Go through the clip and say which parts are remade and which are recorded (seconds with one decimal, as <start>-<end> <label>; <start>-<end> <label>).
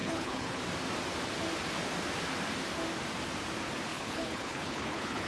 0.0-0.6 remade; 0.6-3.9 recorded; 3.9-5.3 remade